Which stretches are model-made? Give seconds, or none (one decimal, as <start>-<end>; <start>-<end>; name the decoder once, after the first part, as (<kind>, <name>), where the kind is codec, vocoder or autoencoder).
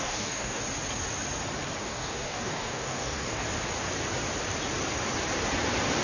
0.0-0.6 (codec, DAC); 1.8-3.4